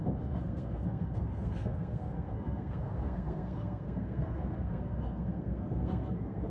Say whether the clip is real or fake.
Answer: fake